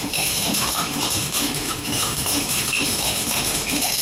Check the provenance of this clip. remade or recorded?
remade